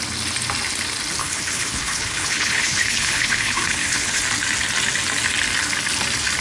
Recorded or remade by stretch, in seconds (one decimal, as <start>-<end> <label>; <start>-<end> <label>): 0.0-1.2 recorded; 1.2-4.2 remade; 4.2-6.4 recorded